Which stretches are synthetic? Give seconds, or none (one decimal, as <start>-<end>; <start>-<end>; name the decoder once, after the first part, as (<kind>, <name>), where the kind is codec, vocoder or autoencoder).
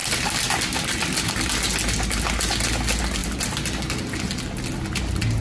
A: 0.0-1.3 (vocoder, BigVGAN v2); 3.2-4.0